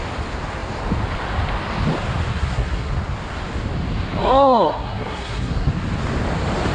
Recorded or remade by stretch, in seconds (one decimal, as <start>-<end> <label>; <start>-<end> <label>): 0.0-2.3 recorded; 2.3-2.9 remade; 2.9-4.2 recorded; 4.2-5.7 remade; 5.7-6.7 recorded